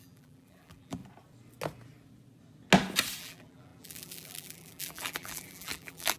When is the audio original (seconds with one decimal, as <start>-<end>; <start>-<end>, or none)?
1.0-3.2